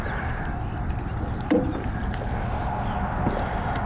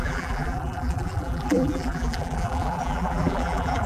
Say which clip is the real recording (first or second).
first